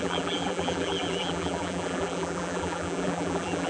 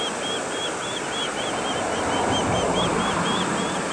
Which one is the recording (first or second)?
second